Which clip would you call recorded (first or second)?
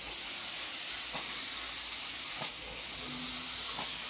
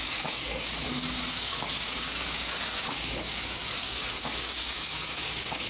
first